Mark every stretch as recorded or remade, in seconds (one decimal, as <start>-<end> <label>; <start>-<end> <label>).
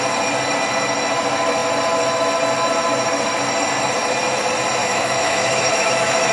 0.0-4.8 recorded; 4.8-6.3 remade